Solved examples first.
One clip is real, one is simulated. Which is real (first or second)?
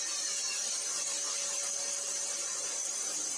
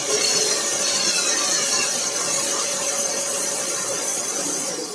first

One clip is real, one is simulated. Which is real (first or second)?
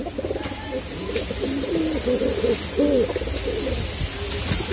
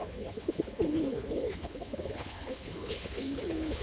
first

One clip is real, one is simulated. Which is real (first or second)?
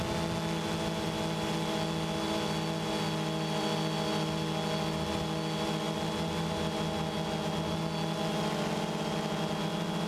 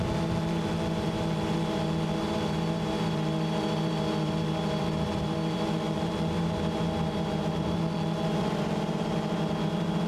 first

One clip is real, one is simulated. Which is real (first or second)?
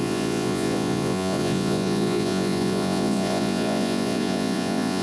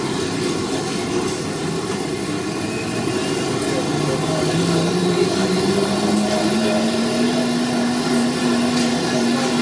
second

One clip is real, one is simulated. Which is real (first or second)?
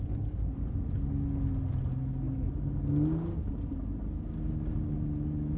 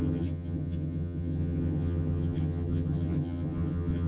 first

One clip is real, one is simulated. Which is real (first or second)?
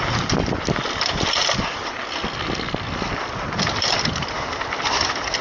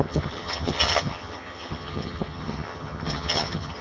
first